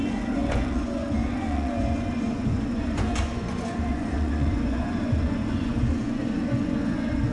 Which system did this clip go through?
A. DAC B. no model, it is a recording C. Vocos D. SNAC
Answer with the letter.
C